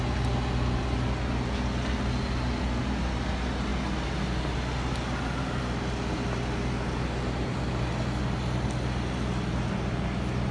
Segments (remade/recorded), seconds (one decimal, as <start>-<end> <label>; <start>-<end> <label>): 0.0-10.5 recorded